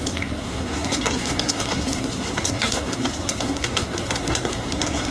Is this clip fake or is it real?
fake